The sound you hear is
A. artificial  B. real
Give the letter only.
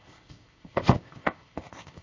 A